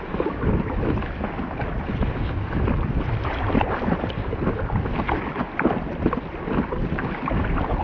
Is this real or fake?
real